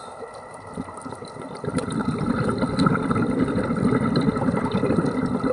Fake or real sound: fake